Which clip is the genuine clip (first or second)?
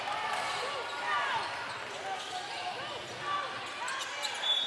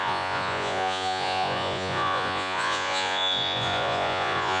first